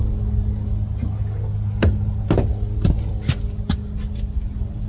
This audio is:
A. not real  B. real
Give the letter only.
B